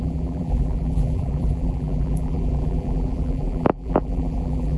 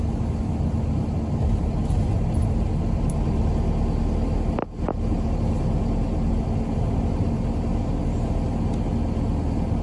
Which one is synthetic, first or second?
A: first